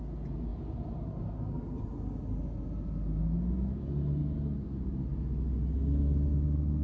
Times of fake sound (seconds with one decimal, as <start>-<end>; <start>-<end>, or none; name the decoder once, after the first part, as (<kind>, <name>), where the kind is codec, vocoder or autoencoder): none